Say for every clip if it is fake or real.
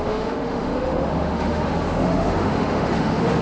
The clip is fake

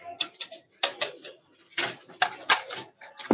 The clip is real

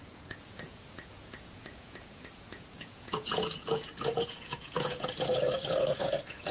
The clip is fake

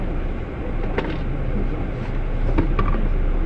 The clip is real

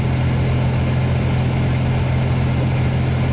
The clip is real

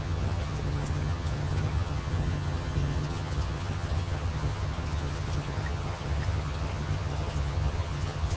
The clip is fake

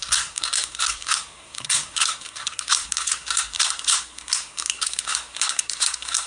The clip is fake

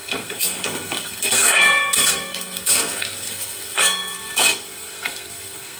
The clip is fake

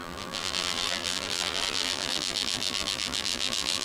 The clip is fake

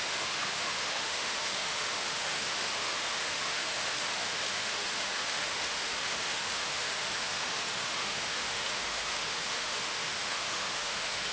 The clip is fake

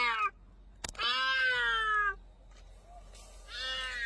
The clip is real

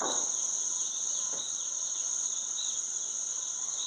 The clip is fake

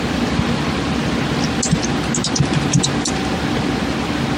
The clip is real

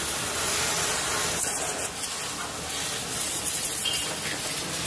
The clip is real